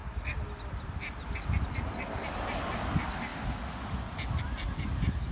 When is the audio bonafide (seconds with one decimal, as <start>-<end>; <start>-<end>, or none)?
0.0-5.3